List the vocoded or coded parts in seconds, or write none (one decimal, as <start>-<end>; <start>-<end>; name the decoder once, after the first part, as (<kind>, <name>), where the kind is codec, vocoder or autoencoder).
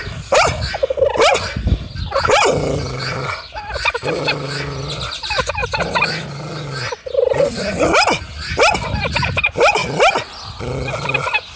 none